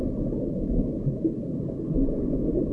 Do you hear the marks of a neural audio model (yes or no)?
no